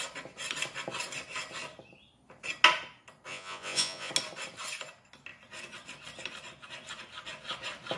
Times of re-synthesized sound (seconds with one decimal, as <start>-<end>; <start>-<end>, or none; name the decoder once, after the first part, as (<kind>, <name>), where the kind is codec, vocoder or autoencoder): 3.3-4.1 (vocoder, Vocos)